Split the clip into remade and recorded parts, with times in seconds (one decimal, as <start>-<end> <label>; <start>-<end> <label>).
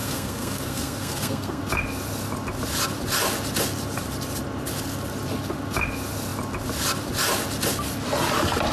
0.0-1.6 remade; 1.6-8.7 recorded